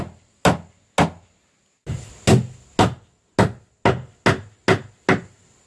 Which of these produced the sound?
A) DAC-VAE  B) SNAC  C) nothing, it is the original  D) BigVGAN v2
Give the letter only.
C